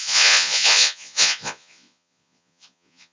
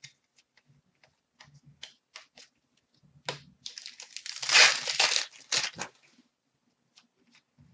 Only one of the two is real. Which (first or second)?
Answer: second